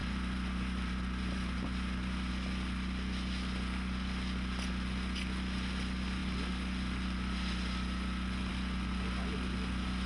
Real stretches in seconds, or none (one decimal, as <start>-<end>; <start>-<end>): 2.3-10.1